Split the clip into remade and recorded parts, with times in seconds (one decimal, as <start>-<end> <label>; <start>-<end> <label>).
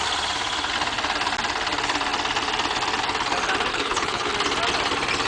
0.0-3.7 recorded; 3.7-4.3 remade; 4.3-5.3 recorded